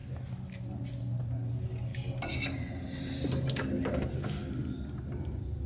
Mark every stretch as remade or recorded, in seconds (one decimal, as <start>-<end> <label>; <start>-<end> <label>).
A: 0.0-5.7 recorded